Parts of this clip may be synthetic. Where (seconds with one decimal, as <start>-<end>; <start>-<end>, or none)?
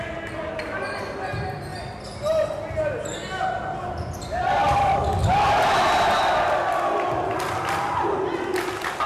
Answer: none